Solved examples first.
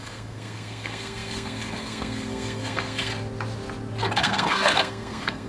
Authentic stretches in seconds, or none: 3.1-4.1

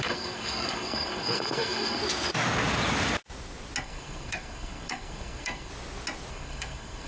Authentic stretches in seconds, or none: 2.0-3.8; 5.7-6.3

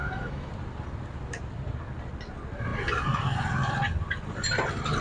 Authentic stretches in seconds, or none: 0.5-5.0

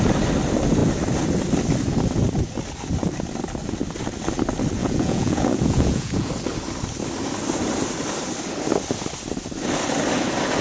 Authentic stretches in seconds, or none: 0.0-4.8; 6.3-10.6

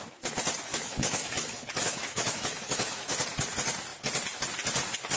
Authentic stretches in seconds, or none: 0.0-0.7; 3.1-5.2

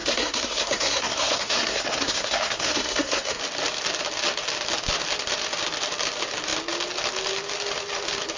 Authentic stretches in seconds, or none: 3.4-8.4

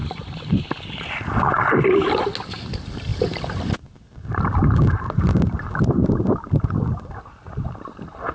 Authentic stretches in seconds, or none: 0.0-8.3

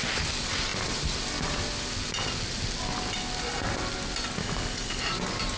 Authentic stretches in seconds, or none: 0.0-4.4; 5.0-5.6